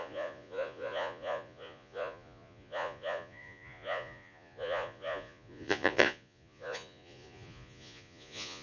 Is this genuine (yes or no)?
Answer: no